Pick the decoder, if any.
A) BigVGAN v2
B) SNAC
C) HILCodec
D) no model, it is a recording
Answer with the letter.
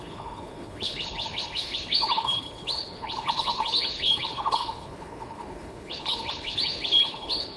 C